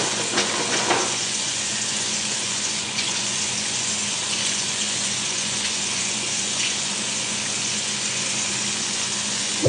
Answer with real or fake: fake